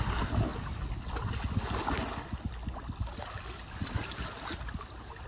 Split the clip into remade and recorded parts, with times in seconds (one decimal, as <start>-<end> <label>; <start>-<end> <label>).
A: 0.0-5.3 recorded